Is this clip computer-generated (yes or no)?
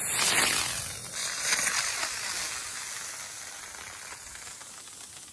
no